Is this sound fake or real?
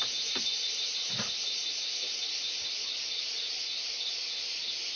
real